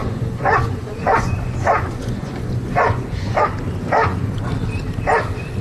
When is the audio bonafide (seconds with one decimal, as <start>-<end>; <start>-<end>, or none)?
3.4-4.0; 4.5-5.6